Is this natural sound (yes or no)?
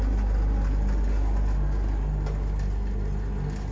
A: yes